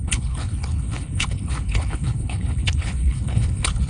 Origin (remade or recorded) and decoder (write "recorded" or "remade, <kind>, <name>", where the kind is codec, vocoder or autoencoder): remade, codec, HILCodec